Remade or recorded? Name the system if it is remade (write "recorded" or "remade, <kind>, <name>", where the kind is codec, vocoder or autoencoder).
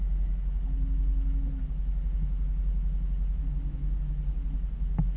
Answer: recorded